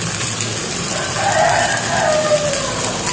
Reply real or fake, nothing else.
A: real